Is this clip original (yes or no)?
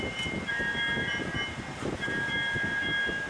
yes